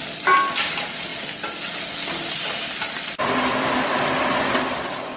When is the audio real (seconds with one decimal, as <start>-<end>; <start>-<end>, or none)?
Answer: 0.0-5.2